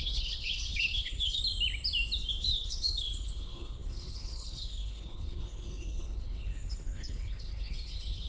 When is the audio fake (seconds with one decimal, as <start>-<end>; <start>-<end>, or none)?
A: 0.0-1.4; 2.4-8.3